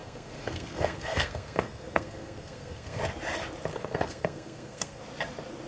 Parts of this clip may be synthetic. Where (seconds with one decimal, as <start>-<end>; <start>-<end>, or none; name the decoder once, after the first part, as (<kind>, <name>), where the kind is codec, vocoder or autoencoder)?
0.0-3.0 (codec, SNAC); 3.7-5.0